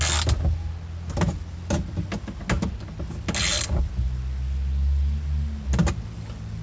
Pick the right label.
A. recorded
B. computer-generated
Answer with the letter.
A